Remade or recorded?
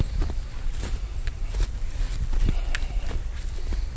recorded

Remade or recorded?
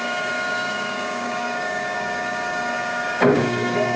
remade